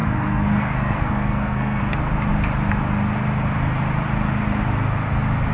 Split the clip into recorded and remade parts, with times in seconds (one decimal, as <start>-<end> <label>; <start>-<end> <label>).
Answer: 0.0-1.8 remade; 1.8-5.5 recorded